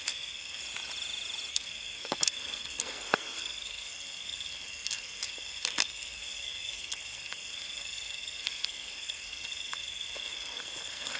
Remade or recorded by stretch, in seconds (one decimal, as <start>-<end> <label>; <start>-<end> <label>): 0.0-0.6 remade; 0.6-1.5 recorded; 1.5-11.2 remade